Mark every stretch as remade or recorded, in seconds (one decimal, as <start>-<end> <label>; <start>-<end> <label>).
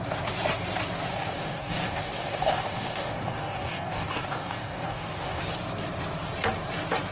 0.0-1.1 recorded; 1.1-5.4 remade; 5.4-7.1 recorded